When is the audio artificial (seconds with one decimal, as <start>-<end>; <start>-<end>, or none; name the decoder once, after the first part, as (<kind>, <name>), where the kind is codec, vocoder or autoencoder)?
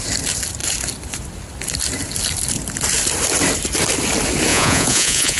4.5-5.4 (vocoder, Vocos)